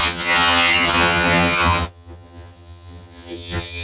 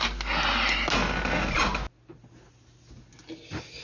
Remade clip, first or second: first